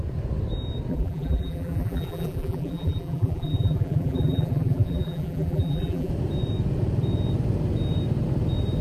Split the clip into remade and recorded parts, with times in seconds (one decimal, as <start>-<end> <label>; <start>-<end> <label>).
0.0-0.9 recorded; 0.9-6.1 remade; 6.1-8.8 recorded